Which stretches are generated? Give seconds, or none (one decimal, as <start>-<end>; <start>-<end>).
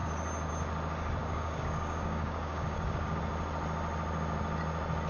1.2-3.2